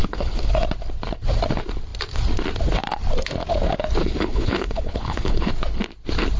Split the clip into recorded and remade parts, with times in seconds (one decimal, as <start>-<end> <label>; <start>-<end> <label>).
0.0-0.5 remade; 0.5-4.0 recorded; 4.0-5.5 remade; 5.5-6.4 recorded